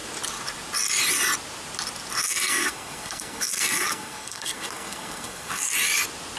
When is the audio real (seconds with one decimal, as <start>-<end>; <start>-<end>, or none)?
0.0-2.2; 5.7-6.4